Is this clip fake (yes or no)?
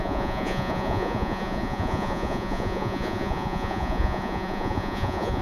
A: yes